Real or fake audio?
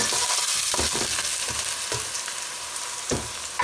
real